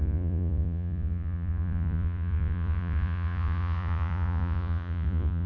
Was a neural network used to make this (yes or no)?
yes